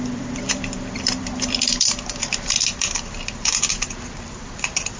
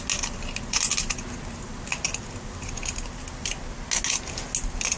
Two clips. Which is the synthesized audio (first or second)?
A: first